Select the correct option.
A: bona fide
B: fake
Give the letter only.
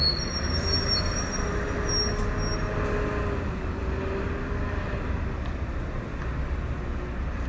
A